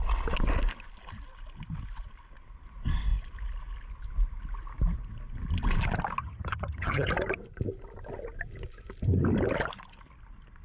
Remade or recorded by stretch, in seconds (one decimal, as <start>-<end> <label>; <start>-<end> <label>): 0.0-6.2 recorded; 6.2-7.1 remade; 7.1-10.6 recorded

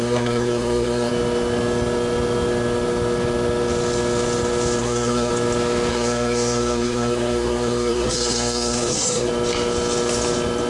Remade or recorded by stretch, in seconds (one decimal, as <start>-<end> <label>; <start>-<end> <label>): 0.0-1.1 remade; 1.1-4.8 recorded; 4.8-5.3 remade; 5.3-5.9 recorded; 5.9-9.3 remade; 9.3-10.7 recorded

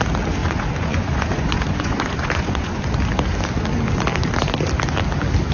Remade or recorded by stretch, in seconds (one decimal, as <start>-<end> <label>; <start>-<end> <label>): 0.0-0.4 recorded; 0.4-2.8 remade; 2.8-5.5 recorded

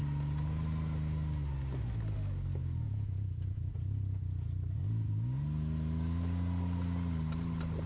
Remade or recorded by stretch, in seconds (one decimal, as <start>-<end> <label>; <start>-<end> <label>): 0.0-2.6 recorded; 2.6-3.7 remade; 3.7-7.9 recorded